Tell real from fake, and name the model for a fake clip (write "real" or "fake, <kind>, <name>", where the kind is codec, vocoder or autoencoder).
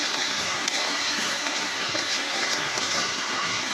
fake, codec, SNAC